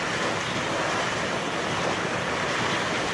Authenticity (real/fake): real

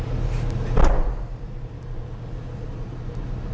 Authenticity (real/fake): real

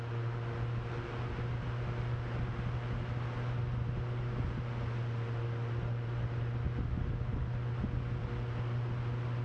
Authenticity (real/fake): real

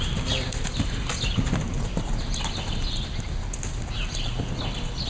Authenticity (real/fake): real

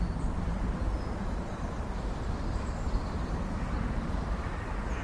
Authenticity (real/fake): real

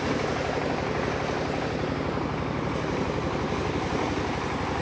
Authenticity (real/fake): real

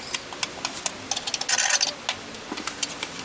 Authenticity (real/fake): real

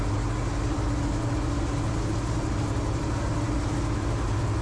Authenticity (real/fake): real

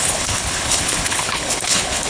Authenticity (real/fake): fake